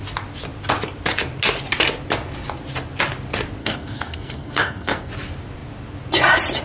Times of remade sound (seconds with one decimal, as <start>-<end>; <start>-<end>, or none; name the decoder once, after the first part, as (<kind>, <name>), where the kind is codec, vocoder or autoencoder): 3.6-5.1 (codec, SNAC)